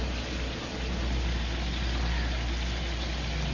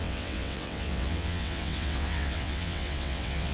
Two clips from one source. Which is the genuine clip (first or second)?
first